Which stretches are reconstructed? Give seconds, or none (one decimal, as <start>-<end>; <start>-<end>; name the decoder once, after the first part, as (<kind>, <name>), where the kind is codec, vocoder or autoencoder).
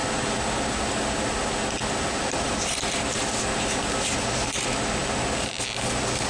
none